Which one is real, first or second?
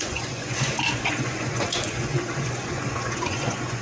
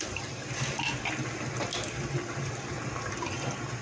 second